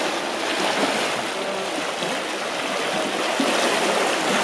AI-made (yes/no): no